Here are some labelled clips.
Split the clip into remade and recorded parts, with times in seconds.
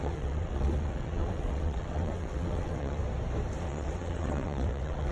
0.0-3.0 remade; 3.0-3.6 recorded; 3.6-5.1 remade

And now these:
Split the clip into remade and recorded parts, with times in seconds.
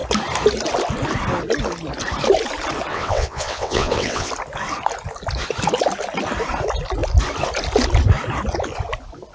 0.0-2.9 recorded; 2.9-4.3 remade; 4.3-9.3 recorded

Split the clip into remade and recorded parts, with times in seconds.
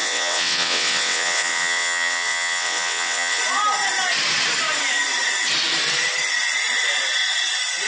0.0-3.4 remade; 3.4-7.9 recorded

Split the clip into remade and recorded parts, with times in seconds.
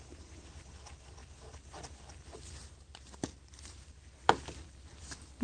0.0-5.4 recorded